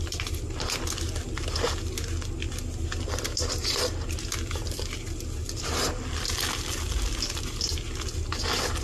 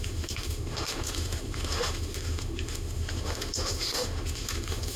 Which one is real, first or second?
first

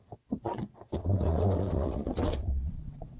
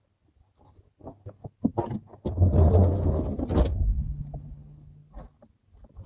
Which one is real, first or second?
second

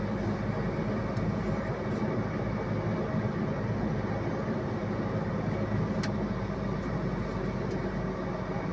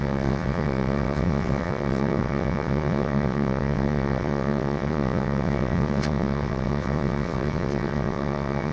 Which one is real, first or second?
first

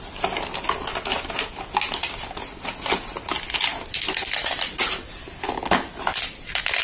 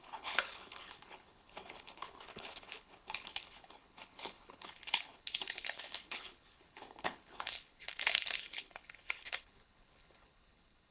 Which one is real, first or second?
first